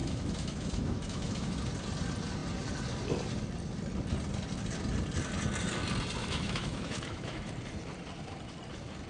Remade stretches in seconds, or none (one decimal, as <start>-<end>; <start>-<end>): 0.0-1.6; 6.2-7.5